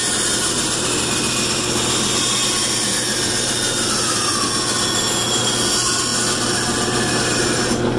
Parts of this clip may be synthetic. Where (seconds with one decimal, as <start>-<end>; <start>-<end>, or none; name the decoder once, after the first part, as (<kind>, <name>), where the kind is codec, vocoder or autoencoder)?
none